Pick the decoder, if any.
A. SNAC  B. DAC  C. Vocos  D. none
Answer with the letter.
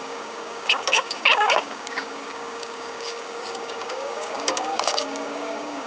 B